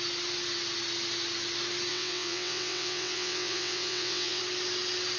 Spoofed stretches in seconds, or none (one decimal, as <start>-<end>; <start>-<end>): 1.9-4.4